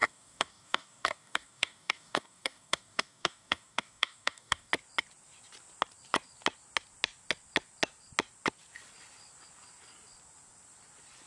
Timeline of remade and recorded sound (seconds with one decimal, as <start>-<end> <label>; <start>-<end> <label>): 0.0-4.7 remade; 4.7-11.3 recorded